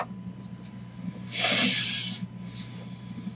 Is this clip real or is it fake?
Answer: real